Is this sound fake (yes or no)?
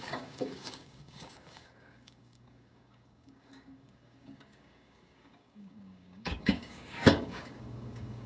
yes